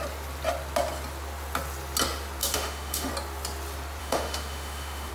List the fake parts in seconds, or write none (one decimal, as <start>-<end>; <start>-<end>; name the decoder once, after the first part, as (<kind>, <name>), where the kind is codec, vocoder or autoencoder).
2.4-3.1 (autoencoder, DAC-VAE); 4.0-5.1